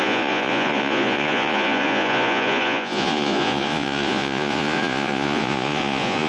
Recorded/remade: remade